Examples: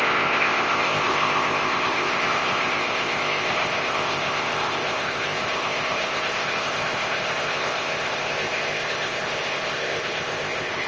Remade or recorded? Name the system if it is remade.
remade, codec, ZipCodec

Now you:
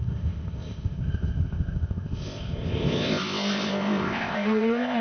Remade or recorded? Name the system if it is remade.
remade, codec, ZipCodec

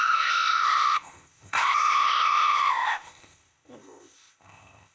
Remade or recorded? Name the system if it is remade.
remade, codec, ZipCodec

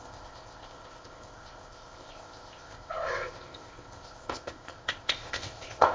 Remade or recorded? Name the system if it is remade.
remade, codec, ZipCodec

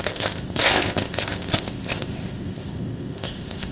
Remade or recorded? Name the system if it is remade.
remade, codec, ZipCodec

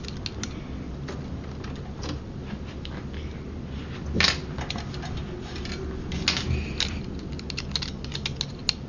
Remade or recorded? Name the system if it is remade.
recorded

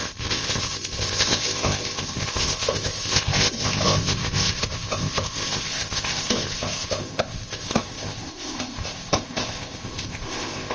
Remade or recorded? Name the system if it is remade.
remade, codec, ZipCodec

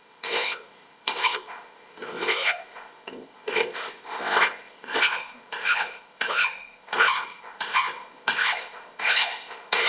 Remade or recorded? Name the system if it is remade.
remade, codec, ZipCodec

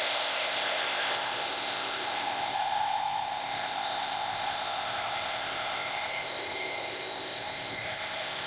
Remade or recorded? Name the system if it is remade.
remade, codec, ZipCodec